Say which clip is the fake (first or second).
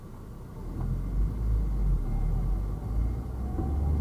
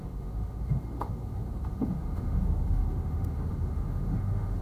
second